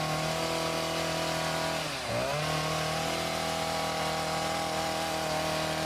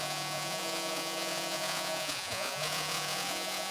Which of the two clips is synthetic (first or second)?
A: second